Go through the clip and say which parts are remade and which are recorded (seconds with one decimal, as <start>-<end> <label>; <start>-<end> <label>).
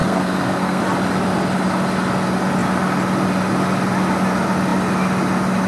0.0-0.8 remade; 0.8-5.7 recorded